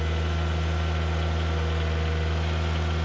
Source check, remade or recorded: recorded